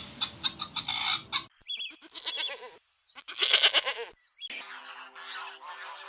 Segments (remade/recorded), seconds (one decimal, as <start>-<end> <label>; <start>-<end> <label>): 0.0-6.1 recorded